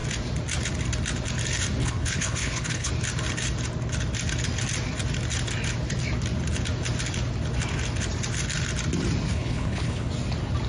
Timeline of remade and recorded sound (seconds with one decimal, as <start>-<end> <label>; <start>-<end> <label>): 0.0-1.8 recorded; 1.8-2.9 remade; 2.9-9.3 recorded; 9.3-10.1 remade; 10.1-10.7 recorded